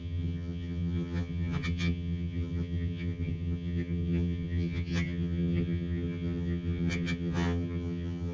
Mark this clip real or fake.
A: fake